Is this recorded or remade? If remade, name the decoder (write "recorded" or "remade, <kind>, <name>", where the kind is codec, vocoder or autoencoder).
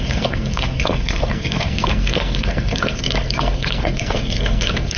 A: remade, codec, SNAC